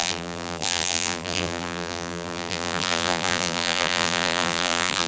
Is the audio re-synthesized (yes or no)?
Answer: yes